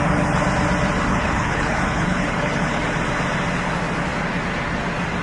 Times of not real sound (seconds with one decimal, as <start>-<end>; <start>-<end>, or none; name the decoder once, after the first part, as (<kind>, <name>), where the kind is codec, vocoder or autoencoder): 1.1-2.8 (codec, HILCodec)